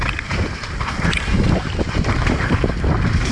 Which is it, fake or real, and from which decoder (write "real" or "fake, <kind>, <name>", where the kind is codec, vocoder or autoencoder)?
real